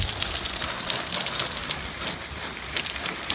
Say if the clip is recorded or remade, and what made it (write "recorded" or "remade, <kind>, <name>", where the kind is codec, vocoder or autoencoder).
recorded